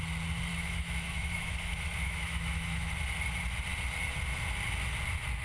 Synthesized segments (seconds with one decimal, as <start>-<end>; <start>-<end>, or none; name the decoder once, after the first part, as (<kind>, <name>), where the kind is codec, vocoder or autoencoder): 0.5-2.9 (autoencoder, DAC-VAE)